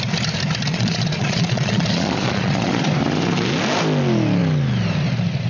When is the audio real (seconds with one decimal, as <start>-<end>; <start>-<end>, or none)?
0.0-0.7; 2.9-5.5

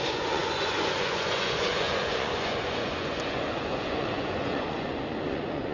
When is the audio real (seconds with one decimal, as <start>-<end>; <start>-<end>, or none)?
none